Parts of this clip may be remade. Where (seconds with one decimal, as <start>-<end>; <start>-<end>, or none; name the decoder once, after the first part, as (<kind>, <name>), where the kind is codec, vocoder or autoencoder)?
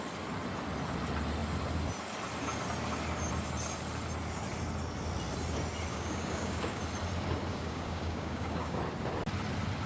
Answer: 5.9-6.8 (codec, DAC); 7.5-8.8